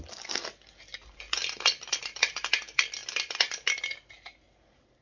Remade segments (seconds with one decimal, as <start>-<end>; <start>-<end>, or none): none